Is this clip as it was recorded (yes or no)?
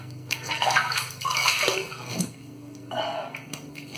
no